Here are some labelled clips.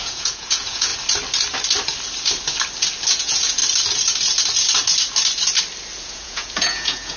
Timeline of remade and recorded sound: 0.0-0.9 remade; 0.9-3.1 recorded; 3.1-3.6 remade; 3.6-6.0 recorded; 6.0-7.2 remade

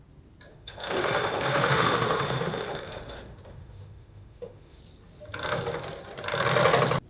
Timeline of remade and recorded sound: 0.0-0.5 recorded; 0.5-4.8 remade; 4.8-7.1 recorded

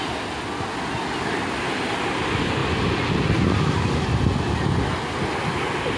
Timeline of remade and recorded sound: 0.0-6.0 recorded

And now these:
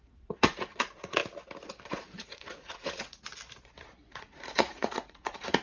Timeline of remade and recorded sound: 0.0-1.2 remade; 1.2-1.9 recorded; 1.9-3.3 remade; 3.3-4.1 recorded; 4.1-5.6 remade

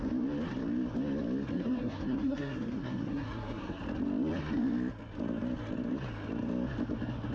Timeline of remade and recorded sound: 0.0-1.5 recorded; 1.5-3.8 remade; 3.8-7.3 recorded